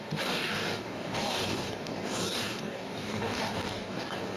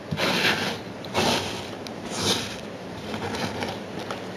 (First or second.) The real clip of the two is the second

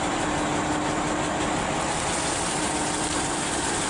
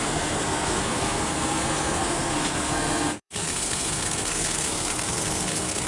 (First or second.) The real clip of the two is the first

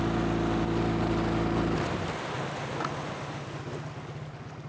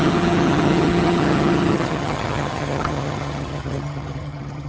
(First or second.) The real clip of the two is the first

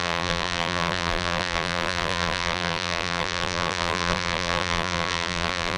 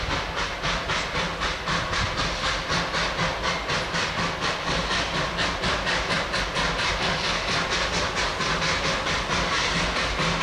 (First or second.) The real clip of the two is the second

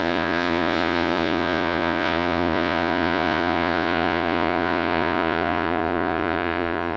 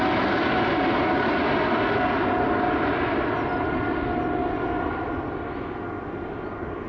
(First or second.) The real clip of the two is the second